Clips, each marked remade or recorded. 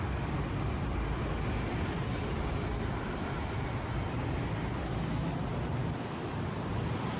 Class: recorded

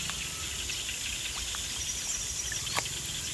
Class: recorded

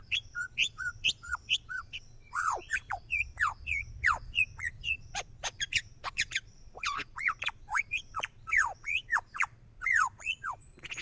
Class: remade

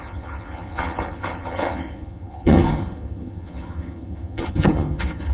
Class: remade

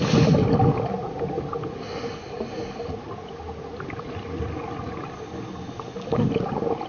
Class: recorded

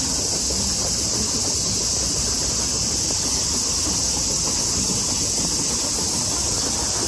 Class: recorded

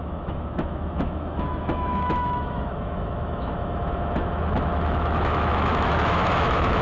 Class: remade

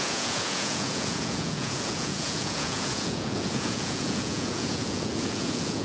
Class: remade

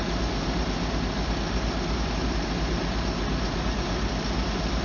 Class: recorded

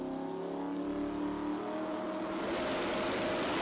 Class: recorded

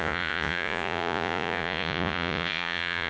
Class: remade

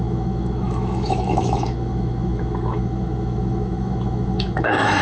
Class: remade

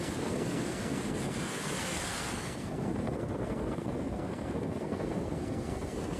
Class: remade